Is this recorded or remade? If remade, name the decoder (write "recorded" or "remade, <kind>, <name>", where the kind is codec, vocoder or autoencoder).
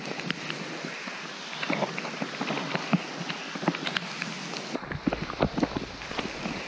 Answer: recorded